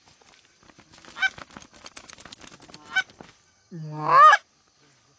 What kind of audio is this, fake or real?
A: real